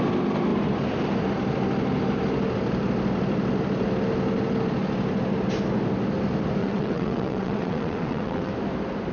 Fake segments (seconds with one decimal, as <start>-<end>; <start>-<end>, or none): 6.6-8.5